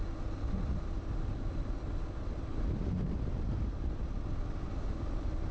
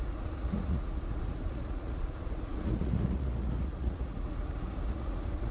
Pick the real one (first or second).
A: first